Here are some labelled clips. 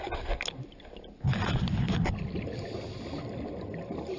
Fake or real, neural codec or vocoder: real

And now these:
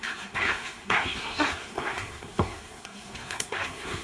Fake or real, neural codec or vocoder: fake, codec, SNAC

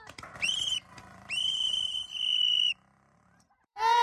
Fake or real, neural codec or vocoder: fake, vocoder, BigVGAN v2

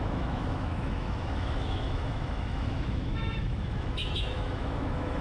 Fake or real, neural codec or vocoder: fake, autoencoder, DAC-VAE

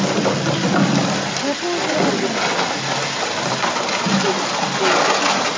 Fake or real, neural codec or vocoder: real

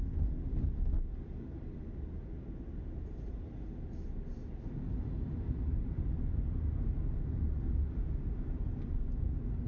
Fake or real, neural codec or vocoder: real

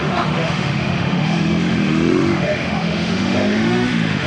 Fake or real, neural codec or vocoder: fake, autoencoder, DAC-VAE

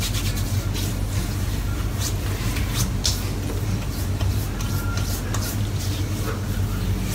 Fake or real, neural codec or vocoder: real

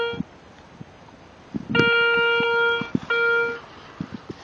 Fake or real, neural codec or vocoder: real